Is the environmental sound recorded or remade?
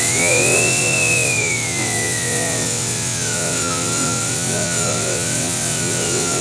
remade